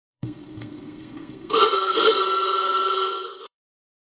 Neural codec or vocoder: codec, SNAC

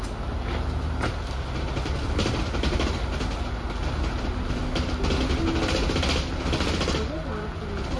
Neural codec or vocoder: none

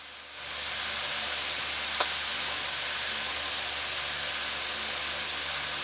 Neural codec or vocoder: none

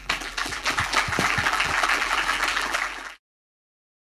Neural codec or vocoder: vocoder, BigVGAN v2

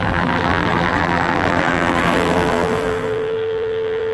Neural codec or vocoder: vocoder, BigVGAN v2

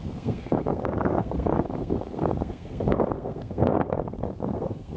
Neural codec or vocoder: codec, SNAC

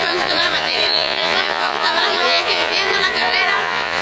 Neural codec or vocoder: vocoder, Vocos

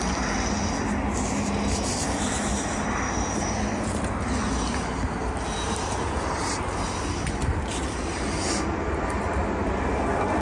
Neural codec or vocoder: none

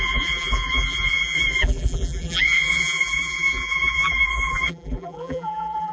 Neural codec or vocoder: vocoder, BigVGAN v2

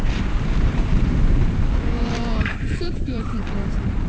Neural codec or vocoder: vocoder, BigVGAN v2